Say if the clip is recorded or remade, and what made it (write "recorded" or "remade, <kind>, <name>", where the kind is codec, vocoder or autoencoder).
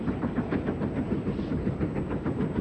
recorded